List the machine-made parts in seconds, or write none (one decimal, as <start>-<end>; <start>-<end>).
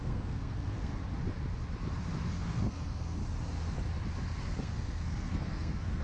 0.0-1.0; 2.3-3.2; 4.4-6.0